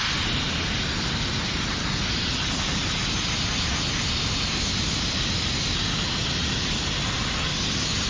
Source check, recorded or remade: recorded